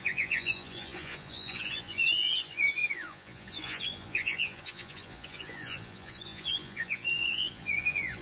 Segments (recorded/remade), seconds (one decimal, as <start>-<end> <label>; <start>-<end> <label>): 0.0-8.2 remade